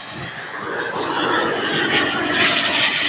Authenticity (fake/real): fake